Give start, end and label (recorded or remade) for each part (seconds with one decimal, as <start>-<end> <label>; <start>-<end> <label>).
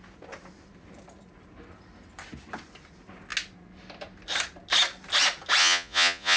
0.0-5.6 recorded; 5.6-6.4 remade